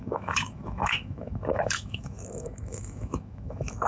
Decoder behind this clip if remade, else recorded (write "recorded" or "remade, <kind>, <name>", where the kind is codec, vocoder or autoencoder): remade, autoencoder, DAC-VAE